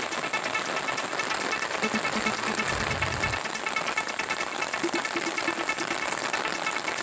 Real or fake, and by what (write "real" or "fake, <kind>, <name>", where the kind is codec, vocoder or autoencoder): real